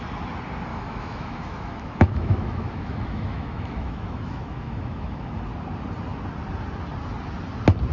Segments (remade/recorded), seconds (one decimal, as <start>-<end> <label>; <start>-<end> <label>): 0.0-0.7 recorded; 0.7-5.4 remade; 5.4-7.9 recorded